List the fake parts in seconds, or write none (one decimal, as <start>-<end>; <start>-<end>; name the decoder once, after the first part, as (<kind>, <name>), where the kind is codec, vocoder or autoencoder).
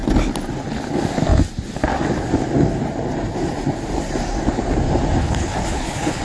5.2-6.2 (codec, HILCodec)